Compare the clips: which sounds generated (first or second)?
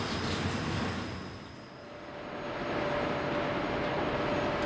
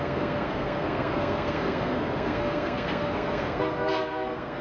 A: second